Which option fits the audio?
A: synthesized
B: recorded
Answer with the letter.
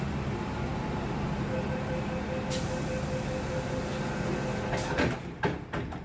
B